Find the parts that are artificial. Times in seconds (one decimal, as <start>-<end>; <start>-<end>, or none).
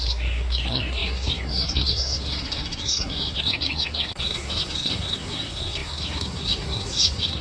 0.0-7.4